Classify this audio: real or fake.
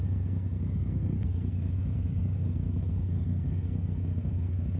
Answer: fake